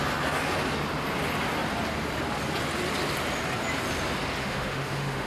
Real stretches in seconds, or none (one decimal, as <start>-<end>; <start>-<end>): 0.0-4.4